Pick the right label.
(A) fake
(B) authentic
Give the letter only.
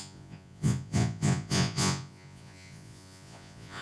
A